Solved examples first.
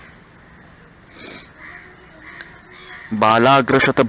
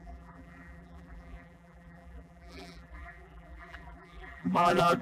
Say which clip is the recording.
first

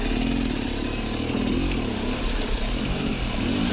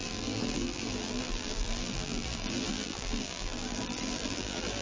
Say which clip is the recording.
first